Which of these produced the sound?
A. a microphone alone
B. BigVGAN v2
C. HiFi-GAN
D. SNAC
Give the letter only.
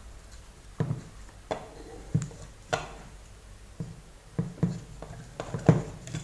A